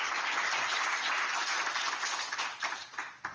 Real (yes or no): yes